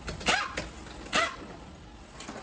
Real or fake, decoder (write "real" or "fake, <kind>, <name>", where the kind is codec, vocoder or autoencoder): real